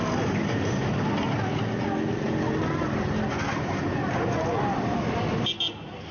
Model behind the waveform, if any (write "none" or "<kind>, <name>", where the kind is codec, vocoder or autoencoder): none